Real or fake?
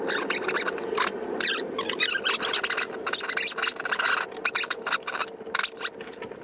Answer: real